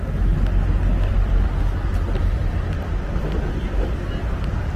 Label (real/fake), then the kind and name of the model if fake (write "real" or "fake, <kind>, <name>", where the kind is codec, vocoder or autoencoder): real